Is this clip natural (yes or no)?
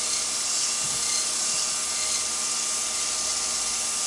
yes